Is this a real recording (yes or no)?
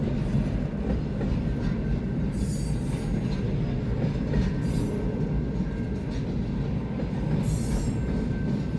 yes